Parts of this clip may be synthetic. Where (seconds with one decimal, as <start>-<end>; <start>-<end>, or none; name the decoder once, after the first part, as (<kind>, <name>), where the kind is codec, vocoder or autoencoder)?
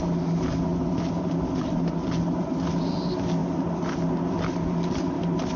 none